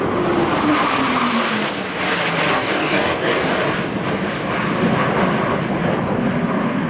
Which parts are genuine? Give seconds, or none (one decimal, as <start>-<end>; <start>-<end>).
0.0-2.5; 3.6-6.9